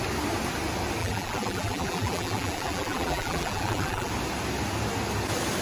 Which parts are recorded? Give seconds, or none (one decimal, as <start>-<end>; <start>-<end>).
0.0-1.0; 4.1-5.6